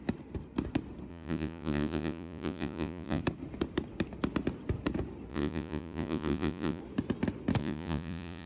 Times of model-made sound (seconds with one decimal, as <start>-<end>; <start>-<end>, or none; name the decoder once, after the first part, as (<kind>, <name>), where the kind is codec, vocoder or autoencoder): 1.1-3.2 (vocoder, Vocos); 5.3-6.8; 7.6-8.5